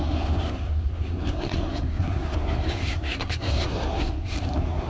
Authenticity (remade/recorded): remade